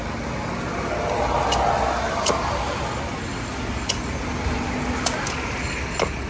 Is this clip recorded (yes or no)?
yes